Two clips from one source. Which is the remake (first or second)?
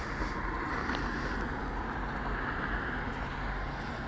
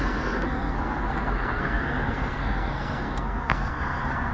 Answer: second